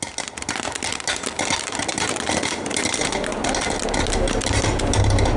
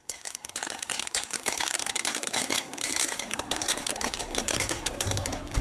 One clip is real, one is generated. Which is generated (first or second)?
second